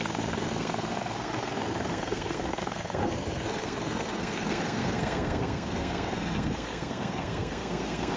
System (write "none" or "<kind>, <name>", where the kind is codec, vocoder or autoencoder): codec, SNAC